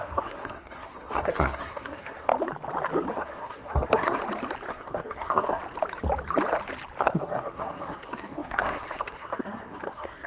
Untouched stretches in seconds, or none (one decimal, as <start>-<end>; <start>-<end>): 2.3-3.1; 4.2-4.7; 5.6-7.0